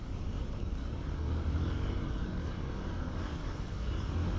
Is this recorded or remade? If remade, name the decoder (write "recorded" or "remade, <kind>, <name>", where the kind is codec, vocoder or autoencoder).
remade, codec, DAC